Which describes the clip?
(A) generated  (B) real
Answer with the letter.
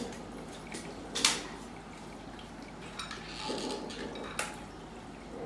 B